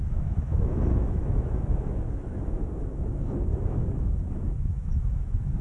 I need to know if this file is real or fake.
fake